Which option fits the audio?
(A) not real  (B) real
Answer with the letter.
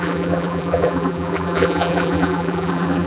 A